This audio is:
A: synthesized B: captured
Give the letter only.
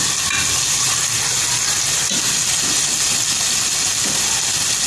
B